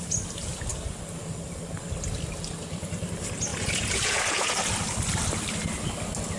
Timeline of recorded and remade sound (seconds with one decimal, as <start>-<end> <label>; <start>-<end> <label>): 0.0-3.5 recorded; 3.5-4.5 remade; 4.5-6.4 recorded